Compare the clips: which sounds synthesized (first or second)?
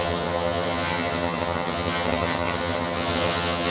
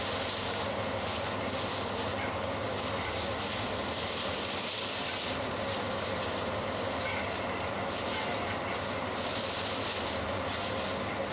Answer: first